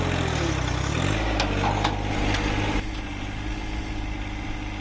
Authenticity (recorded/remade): recorded